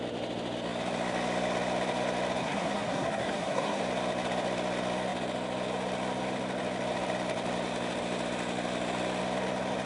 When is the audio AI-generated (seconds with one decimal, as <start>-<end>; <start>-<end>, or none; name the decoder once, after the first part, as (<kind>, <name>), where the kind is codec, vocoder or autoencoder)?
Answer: 2.4-3.8 (codec, SNAC)